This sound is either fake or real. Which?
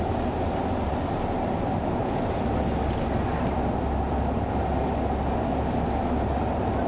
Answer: real